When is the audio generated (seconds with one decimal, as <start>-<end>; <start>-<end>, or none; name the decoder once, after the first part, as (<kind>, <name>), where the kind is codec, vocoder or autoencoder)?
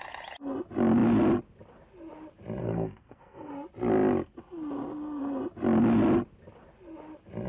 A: 2.6-3.5 (codec, SNAC)